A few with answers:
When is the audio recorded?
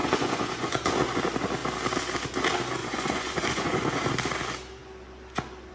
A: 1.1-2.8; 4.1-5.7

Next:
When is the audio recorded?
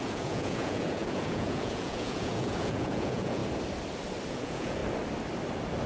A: 3.4-4.3; 4.8-5.9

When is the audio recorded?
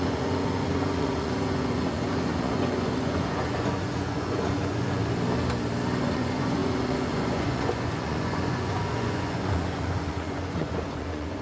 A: 5.0-6.0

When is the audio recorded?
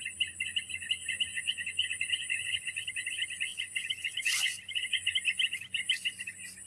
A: 0.0-1.3; 2.8-3.5; 5.1-6.7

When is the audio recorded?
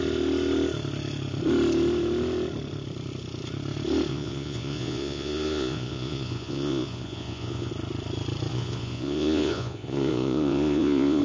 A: 0.0-4.1; 7.7-8.5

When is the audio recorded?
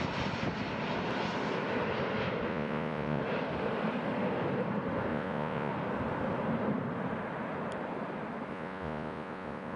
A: 0.0-2.5; 3.2-5.1; 5.7-8.5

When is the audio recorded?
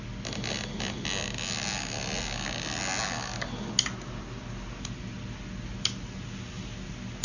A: 0.0-7.2